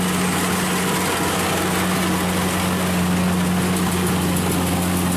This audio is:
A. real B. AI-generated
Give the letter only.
A